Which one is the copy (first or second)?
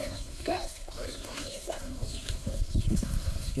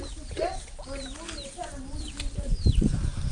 first